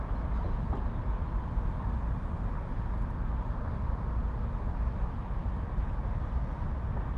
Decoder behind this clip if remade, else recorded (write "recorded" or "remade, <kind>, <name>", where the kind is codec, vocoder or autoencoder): recorded